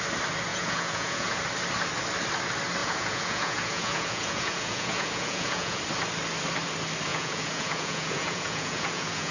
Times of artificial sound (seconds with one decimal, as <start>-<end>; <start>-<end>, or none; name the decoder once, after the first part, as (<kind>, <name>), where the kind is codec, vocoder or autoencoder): 0.5-1.4 (vocoder, Vocos); 2.8-5.8; 7.1-9.3